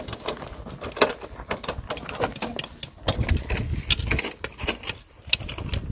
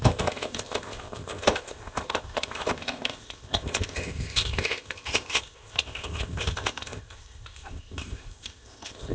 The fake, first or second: second